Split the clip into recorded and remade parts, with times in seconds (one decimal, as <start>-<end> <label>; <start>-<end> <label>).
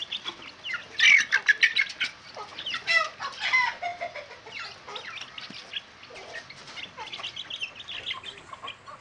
0.0-9.0 recorded